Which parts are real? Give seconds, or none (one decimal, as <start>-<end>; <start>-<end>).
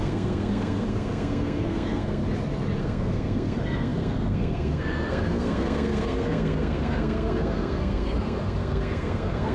2.2-2.8